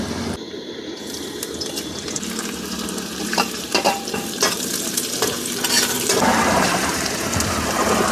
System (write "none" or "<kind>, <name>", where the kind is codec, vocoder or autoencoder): vocoder, BigVGAN v2